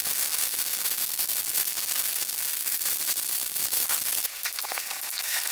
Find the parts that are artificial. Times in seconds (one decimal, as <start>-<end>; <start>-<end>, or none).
0.0-5.5